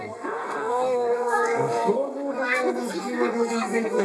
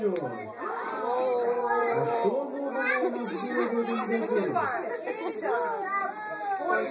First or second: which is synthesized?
first